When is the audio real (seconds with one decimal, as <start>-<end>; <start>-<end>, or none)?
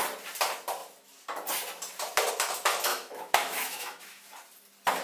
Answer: 0.0-2.9; 4.3-5.0